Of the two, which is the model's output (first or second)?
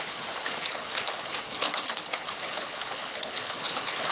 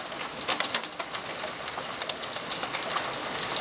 first